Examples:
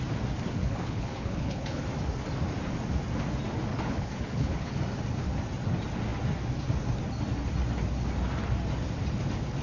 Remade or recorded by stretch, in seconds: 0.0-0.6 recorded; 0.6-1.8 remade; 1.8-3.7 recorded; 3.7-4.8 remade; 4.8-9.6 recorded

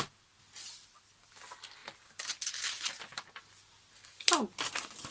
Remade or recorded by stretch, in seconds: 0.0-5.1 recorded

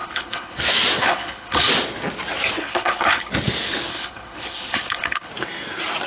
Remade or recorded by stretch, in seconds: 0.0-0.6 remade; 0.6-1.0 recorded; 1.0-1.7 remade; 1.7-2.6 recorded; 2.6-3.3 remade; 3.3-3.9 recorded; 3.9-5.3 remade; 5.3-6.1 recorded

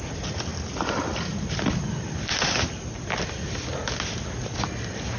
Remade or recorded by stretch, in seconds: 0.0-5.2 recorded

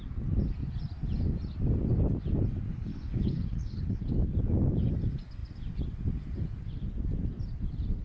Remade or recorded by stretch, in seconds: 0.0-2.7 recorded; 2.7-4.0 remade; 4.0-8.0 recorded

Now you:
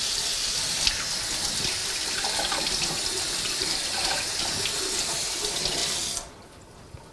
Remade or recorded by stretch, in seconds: 0.0-7.1 recorded

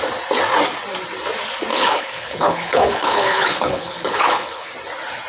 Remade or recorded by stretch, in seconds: 0.0-1.7 recorded; 1.7-4.7 remade; 4.7-5.3 recorded

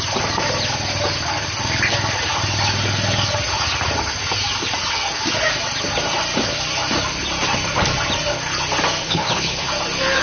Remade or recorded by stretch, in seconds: 0.0-9.0 recorded; 9.0-9.7 remade; 9.7-10.2 recorded